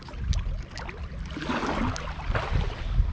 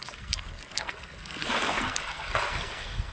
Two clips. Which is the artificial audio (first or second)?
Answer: second